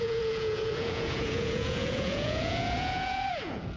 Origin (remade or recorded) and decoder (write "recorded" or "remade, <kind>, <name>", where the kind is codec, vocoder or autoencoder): remade, vocoder, Vocos